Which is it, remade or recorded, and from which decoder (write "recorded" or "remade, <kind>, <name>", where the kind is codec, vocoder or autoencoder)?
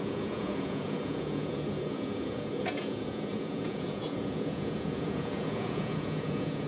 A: remade, vocoder, Vocos